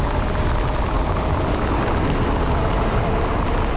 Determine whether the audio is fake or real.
real